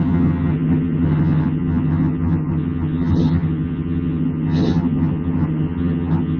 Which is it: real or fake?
fake